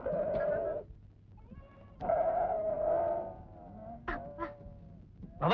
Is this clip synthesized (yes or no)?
no